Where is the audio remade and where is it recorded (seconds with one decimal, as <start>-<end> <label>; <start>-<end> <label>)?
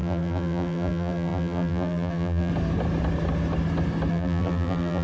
0.0-2.5 remade; 2.5-4.1 recorded; 4.1-5.0 remade